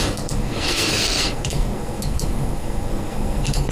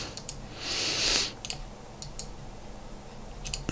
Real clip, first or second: second